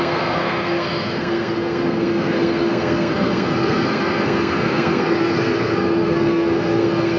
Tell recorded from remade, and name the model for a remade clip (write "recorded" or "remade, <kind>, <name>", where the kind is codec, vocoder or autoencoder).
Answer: remade, codec, SNAC